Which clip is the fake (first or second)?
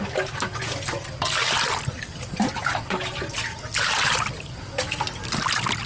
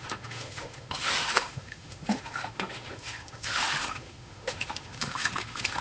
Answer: second